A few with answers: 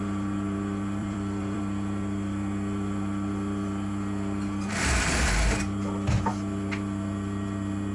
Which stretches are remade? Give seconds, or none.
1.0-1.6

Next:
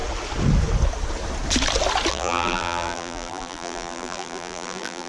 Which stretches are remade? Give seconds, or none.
2.1-5.1